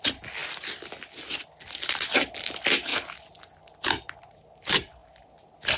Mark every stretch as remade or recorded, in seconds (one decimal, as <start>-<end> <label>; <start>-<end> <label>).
0.0-5.8 recorded